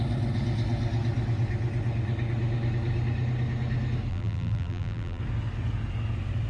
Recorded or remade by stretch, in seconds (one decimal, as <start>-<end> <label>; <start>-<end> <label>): 0.0-4.1 recorded; 4.1-5.2 remade; 5.2-6.5 recorded